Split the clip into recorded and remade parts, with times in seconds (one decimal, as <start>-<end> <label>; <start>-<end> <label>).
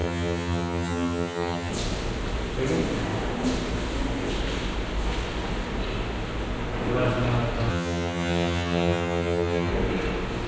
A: 0.0-1.7 remade; 1.7-7.7 recorded; 7.7-9.7 remade; 9.7-10.5 recorded